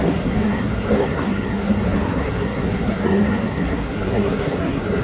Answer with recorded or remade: remade